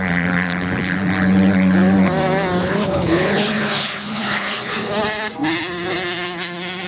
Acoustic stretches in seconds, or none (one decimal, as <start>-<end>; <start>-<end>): 0.0-2.6; 4.9-6.9